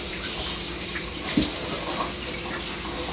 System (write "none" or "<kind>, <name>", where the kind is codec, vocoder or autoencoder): vocoder, BigVGAN v2